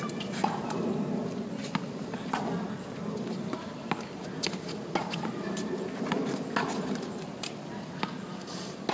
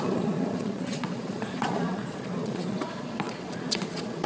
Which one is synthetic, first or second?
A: second